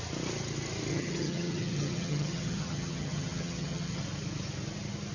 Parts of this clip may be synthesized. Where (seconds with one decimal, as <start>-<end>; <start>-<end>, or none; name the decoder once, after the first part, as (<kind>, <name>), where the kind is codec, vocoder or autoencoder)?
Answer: 0.9-4.0 (vocoder, HiFi-GAN)